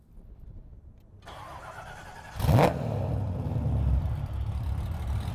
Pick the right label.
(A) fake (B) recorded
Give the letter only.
A